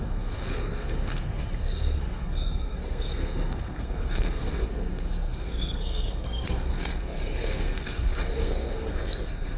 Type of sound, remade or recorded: remade